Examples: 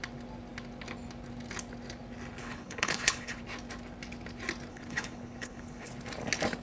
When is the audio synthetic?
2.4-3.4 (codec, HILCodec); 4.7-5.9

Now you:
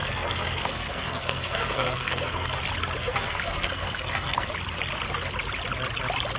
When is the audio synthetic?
0.0-2.6 (codec, SNAC); 3.0-4.5

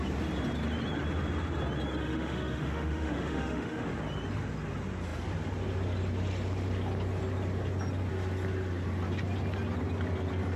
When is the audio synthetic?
2.0-3.9 (autoencoder, DAC-VAE)

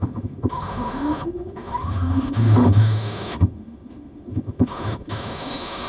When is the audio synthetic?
0.0-5.9 (autoencoder, DAC-VAE)